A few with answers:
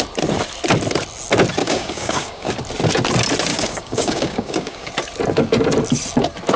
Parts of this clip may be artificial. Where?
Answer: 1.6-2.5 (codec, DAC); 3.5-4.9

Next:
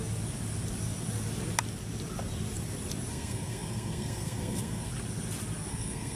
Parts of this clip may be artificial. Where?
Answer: 3.1-4.9 (codec, SNAC); 5.7-6.2

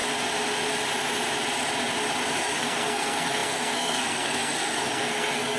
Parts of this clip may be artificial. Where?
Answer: 2.5-5.6 (codec, SNAC)

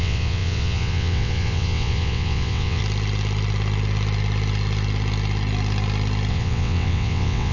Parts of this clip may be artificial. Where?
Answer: 0.0-2.8 (vocoder, WaveNeXt); 6.3-7.5

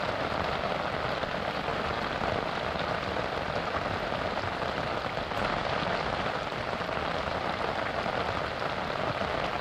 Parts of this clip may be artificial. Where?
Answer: none